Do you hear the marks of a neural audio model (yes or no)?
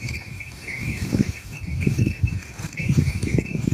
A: yes